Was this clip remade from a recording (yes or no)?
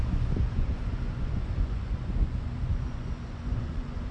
yes